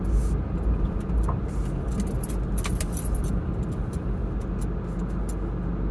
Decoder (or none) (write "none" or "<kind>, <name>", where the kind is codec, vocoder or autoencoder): none